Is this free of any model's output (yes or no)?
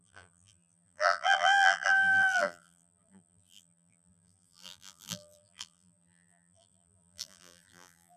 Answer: no